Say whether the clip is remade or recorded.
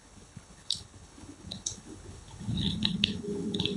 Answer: remade